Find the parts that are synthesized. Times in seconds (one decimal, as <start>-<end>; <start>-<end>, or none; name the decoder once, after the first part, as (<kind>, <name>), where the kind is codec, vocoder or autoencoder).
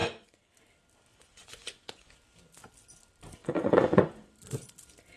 0.0-0.5 (vocoder, Vocos); 1.1-2.1; 3.4-4.3